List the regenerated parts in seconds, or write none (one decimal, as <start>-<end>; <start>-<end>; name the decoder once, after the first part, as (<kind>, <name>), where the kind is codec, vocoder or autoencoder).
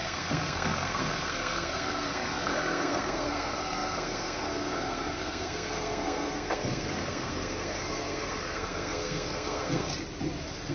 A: 0.0-9.9 (codec, SNAC)